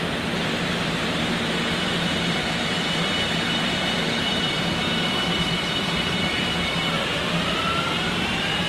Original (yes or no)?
no